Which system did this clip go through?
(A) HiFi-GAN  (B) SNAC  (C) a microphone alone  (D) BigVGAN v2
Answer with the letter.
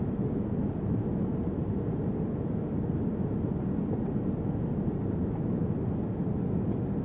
C